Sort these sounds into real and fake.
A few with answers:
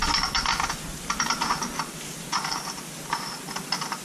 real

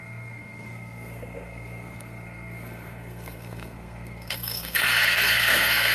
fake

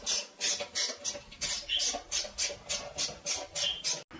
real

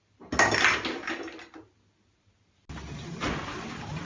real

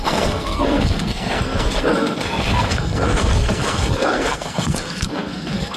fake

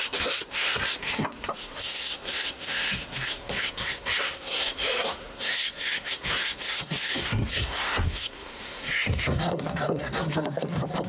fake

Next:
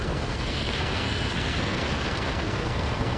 fake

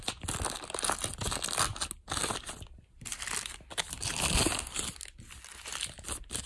real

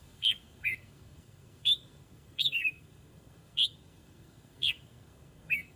fake